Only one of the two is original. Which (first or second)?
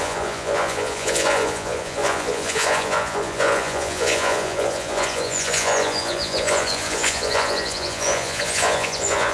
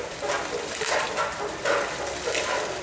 second